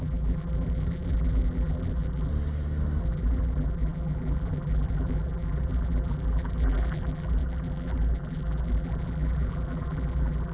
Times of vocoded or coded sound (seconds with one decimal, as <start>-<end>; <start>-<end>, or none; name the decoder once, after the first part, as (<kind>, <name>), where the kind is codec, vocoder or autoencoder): 0.0-2.3 (vocoder, BigVGAN v2); 3.0-10.5